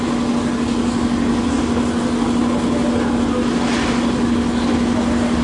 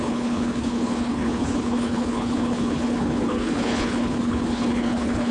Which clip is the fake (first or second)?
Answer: second